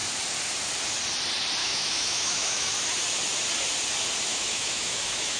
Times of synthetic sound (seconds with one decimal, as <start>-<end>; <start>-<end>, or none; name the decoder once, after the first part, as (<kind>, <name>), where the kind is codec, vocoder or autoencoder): 1.6-2.7 (autoencoder, DAC-VAE); 4.3-5.4